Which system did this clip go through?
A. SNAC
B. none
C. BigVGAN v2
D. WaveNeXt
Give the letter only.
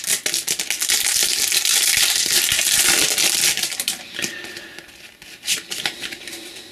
B